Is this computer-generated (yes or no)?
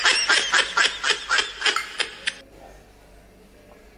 no